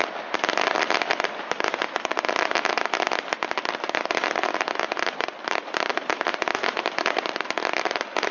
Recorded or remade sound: recorded